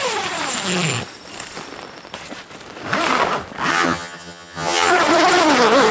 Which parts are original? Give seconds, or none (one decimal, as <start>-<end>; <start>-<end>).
0.0-3.7; 4.9-5.9